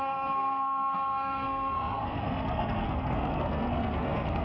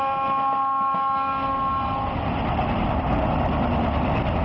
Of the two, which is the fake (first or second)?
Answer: first